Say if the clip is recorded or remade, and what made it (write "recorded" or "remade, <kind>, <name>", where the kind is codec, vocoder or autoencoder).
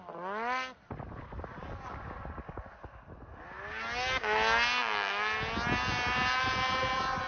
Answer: recorded